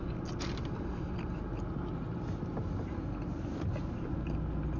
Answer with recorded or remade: recorded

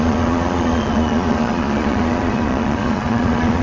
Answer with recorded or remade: remade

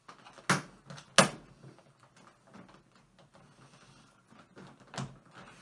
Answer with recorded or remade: recorded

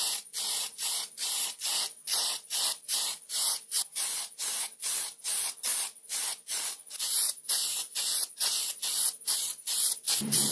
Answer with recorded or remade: remade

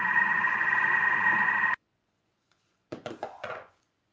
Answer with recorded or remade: remade